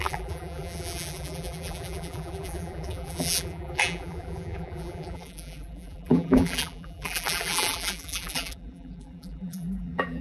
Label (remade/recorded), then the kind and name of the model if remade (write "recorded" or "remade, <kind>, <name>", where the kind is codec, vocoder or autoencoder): remade, vocoder, BigVGAN v2